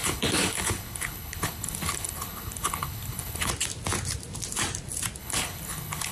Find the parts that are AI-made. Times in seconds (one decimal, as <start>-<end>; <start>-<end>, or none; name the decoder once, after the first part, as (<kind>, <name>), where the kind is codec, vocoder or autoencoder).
0.0-3.5 (codec, HILCodec); 5.2-6.1